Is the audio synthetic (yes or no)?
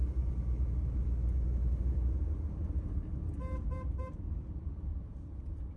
no